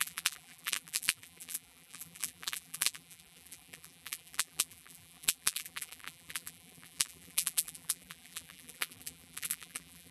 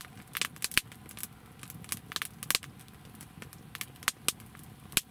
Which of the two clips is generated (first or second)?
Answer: first